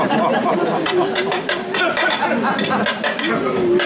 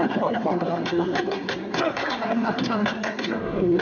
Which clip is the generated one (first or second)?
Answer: second